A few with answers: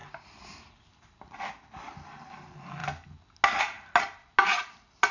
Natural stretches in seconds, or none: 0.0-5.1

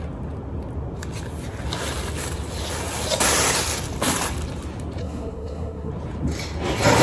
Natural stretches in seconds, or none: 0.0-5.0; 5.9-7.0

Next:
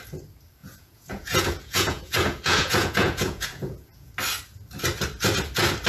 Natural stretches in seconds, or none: 0.0-0.6; 4.1-5.9

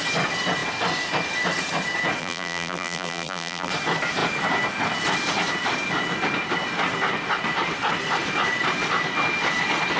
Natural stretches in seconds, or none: 0.0-2.2; 3.7-10.0

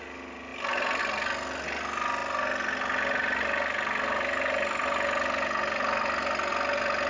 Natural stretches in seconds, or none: 0.0-7.1

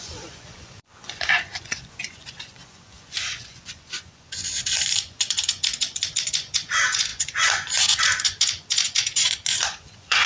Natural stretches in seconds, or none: none